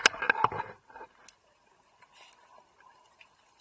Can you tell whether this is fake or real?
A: real